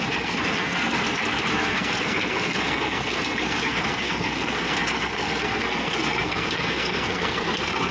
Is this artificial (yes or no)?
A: yes